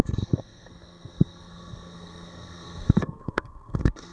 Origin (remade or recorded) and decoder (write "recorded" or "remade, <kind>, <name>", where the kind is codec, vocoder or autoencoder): remade, codec, SNAC